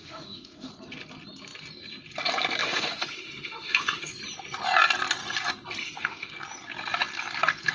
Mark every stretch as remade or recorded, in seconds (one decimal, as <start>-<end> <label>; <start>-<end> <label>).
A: 0.0-0.7 remade; 0.7-2.6 recorded; 2.6-4.1 remade; 4.1-5.8 recorded; 5.8-6.3 remade; 6.3-7.7 recorded